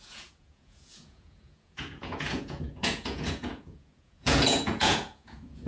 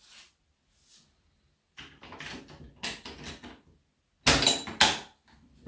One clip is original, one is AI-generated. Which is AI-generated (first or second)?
first